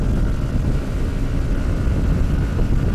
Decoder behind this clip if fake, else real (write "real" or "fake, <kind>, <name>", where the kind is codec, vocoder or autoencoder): real